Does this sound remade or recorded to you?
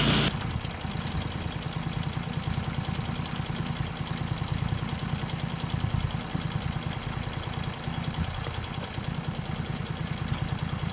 recorded